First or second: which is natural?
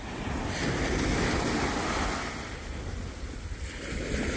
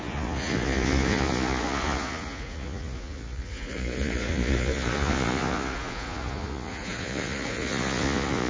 first